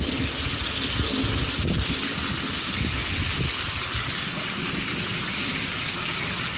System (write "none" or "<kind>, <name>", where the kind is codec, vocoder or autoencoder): none